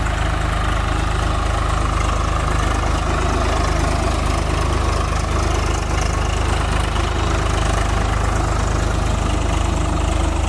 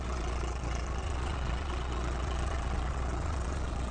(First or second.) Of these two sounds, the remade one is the second